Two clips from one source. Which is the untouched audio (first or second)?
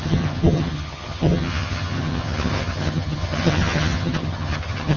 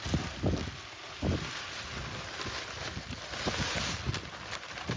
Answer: second